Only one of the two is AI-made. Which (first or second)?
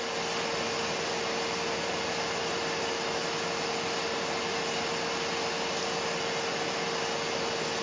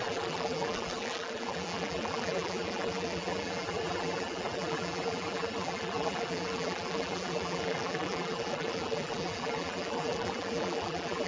second